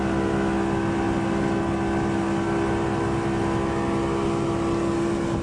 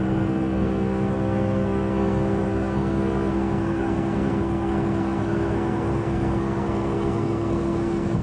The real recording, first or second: first